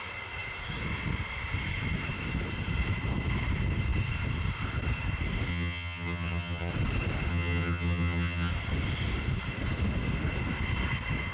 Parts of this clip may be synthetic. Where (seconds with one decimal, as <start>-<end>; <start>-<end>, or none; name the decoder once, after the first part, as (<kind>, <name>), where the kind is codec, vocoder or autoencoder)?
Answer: 5.5-6.7 (vocoder, HiFi-GAN); 7.3-8.5